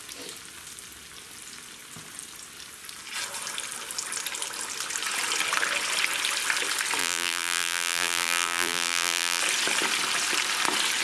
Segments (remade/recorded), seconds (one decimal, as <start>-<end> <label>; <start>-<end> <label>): 0.0-7.0 recorded; 7.0-9.4 remade; 9.4-11.0 recorded